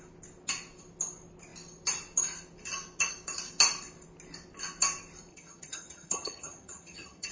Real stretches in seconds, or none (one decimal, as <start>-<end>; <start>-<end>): 0.0-5.3